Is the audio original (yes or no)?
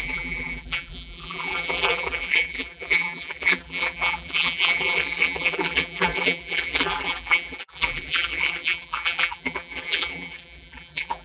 no